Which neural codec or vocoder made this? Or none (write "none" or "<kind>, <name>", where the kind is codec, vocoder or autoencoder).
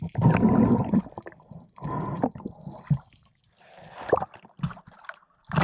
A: none